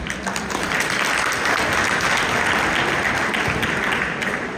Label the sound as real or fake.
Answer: real